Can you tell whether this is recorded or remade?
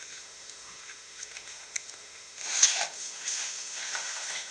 remade